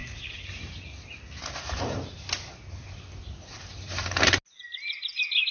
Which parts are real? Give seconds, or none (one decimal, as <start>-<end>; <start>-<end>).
0.0-5.5